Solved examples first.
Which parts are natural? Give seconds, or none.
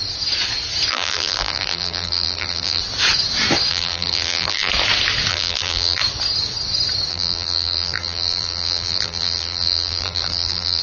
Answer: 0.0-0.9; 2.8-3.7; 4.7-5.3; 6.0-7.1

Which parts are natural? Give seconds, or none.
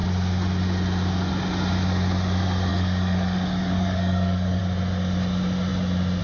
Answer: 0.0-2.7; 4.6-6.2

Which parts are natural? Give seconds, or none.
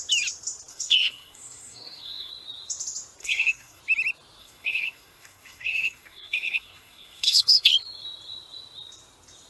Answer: 0.0-0.7; 2.3-3.2; 3.8-4.4; 7.7-9.5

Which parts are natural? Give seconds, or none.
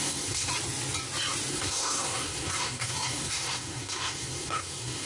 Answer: 0.5-1.5